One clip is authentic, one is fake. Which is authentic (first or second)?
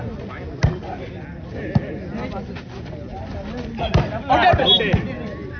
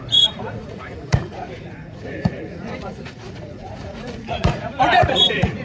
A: first